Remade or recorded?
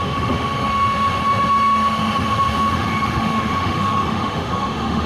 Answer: remade